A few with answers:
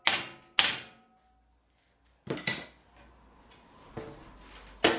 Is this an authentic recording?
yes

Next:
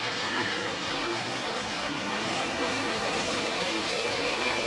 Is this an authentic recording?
no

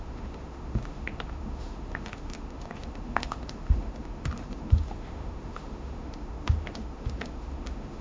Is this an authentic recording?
no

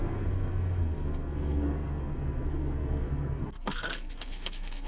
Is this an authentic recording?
no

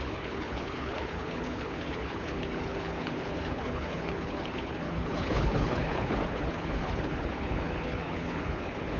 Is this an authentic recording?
no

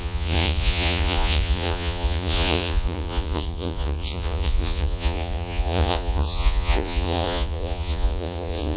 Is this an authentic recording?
no